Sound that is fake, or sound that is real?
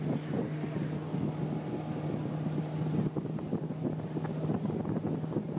real